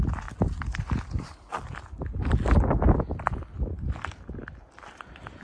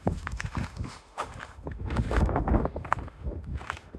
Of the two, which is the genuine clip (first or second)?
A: first